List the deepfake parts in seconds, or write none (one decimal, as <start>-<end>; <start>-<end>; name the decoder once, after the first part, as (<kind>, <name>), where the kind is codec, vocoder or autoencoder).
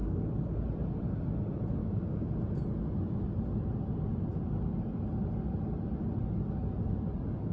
0.0-0.7 (codec, DAC); 1.8-2.3